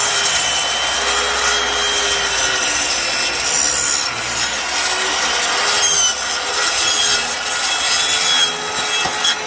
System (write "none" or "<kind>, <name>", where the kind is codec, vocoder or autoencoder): none